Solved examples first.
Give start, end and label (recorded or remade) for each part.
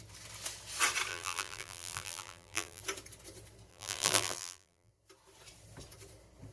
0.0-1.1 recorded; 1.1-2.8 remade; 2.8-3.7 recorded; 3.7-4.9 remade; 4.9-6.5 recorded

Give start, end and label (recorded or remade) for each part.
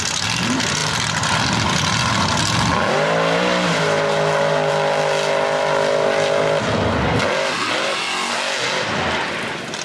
0.0-9.8 recorded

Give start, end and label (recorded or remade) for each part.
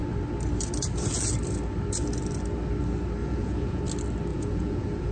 0.0-3.2 recorded; 3.2-3.8 remade; 3.8-4.3 recorded; 4.3-5.1 remade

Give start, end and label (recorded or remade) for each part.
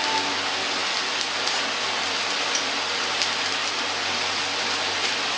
0.0-5.4 recorded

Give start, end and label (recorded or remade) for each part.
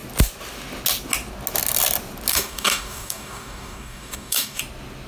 0.0-2.3 recorded; 2.3-4.6 remade; 4.6-5.1 recorded